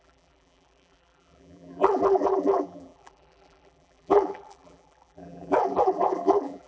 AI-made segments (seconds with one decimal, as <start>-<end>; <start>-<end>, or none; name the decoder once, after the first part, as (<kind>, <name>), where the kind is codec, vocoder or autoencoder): 0.0-6.7 (vocoder, BigVGAN v2)